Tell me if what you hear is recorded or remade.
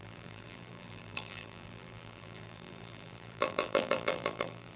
remade